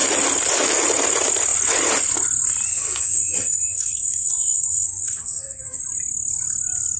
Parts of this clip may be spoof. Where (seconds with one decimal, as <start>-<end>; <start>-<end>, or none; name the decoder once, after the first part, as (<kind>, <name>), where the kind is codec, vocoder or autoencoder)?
2.7-5.8 (codec, SNAC)